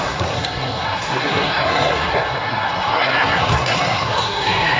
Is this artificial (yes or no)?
yes